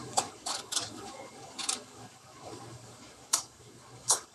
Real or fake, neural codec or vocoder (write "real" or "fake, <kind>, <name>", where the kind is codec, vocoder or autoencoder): fake, codec, DAC